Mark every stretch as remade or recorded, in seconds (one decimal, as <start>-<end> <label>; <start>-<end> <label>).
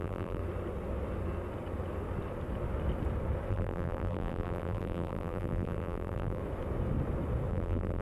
0.0-0.4 remade; 0.4-3.5 recorded; 3.5-6.4 remade; 6.4-7.5 recorded; 7.5-8.0 remade